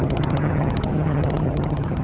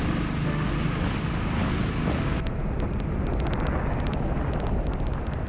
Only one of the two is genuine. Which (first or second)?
second